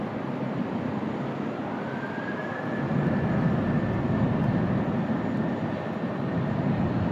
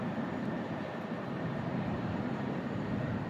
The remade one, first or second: second